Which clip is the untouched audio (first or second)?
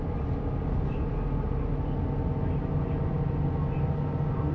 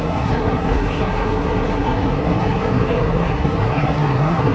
first